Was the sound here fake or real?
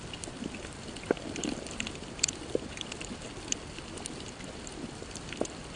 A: fake